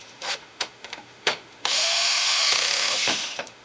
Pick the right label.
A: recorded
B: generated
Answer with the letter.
B